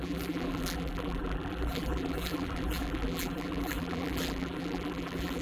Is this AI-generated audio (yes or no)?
yes